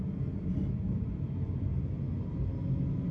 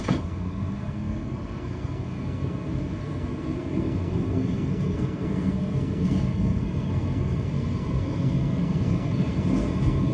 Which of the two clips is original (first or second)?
first